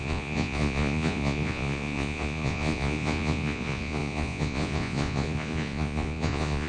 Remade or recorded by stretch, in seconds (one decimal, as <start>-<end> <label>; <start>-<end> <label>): 0.0-6.7 remade